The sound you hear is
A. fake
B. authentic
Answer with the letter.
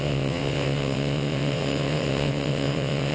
A